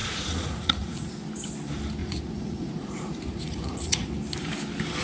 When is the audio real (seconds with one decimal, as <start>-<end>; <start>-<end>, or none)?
1.1-2.0; 4.1-5.0